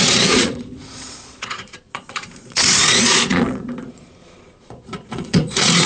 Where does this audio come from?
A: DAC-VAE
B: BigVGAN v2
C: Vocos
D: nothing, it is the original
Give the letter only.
C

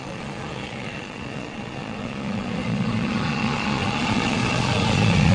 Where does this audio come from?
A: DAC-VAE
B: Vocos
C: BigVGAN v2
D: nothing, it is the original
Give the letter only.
B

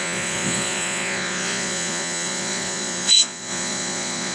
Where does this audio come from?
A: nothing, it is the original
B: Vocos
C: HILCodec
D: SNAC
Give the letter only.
B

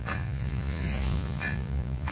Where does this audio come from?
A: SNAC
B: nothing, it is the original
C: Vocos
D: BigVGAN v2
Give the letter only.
C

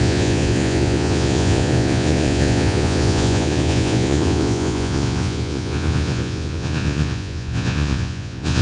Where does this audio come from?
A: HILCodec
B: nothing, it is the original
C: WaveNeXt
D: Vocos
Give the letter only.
D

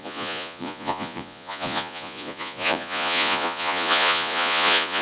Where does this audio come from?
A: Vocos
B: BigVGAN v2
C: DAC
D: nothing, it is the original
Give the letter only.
A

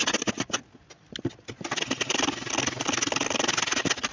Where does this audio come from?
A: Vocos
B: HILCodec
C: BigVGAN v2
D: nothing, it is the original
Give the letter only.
D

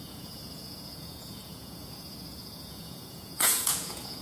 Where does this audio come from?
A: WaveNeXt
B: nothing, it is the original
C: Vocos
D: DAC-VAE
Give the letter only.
C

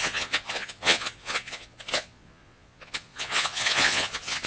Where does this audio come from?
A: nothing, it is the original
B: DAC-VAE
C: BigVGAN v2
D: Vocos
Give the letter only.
D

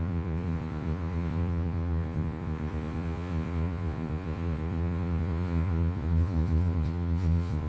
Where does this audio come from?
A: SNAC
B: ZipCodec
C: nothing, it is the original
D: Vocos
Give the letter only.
D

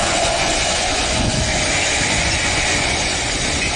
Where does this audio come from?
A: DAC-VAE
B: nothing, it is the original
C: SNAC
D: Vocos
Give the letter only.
D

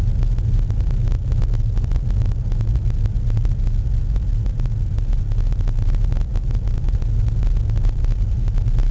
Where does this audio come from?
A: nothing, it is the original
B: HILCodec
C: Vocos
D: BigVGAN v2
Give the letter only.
A